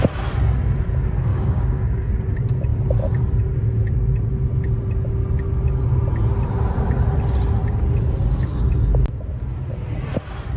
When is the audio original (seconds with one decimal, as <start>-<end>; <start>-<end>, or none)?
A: 0.0-1.3; 2.1-10.6